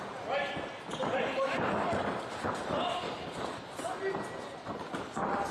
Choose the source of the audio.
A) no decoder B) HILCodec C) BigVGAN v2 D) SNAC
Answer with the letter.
A